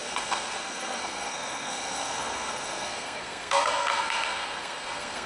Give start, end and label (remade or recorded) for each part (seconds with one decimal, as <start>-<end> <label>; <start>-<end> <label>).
0.0-5.3 remade